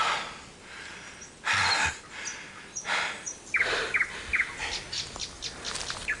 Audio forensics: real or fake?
real